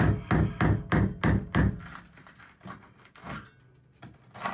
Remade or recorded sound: recorded